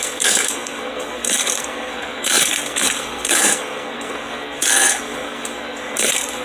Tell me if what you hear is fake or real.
fake